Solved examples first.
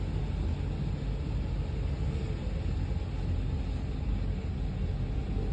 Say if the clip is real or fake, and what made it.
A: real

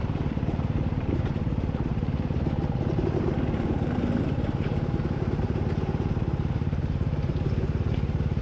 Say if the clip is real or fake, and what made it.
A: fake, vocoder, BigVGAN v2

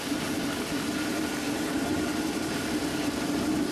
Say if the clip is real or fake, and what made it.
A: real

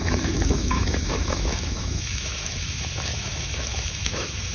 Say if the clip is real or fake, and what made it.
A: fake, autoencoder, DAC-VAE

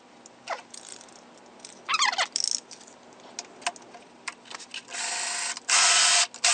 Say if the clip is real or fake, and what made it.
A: real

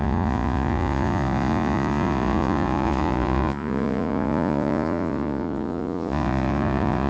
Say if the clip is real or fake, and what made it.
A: fake, vocoder, Vocos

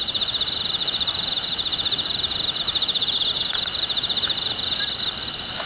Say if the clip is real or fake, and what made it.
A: real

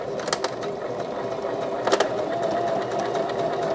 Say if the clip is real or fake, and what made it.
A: real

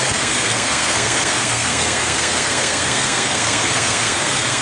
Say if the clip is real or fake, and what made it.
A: fake, codec, SNAC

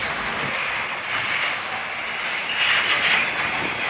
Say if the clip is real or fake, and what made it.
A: real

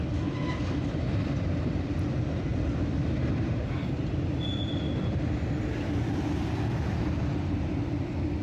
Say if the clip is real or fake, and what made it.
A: real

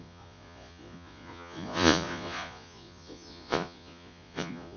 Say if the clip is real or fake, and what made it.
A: fake, vocoder, Vocos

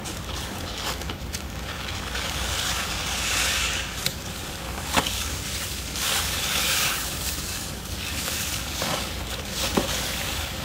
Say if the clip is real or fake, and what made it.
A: fake, codec, DAC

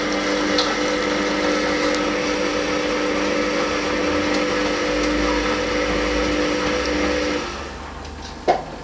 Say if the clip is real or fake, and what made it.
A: real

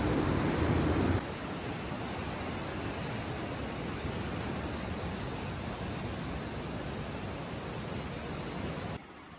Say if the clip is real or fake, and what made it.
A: real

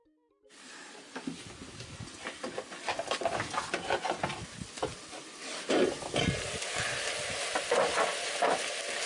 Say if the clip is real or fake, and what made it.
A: real